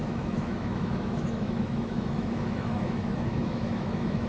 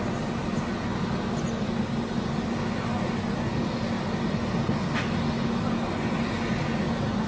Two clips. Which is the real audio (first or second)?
second